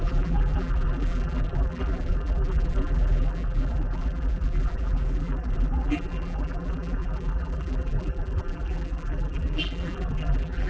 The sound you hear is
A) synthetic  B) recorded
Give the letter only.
A